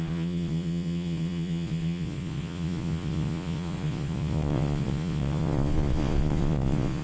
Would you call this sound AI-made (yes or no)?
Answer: yes